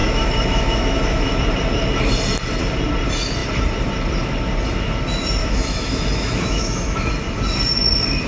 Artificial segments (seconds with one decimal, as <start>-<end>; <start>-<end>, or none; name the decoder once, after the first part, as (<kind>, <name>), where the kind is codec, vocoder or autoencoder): 0.0-1.4 (autoencoder, DAC-VAE); 5.4-7.1